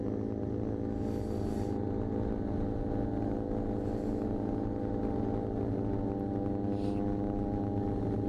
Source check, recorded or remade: recorded